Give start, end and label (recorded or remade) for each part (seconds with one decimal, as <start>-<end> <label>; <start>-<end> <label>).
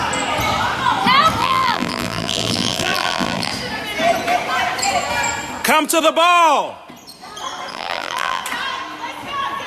0.0-1.4 recorded; 1.4-3.5 remade; 3.5-7.7 recorded; 7.7-8.4 remade; 8.4-9.7 recorded